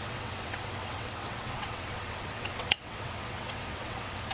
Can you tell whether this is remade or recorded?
remade